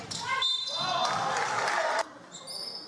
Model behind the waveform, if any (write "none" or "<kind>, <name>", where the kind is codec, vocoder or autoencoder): none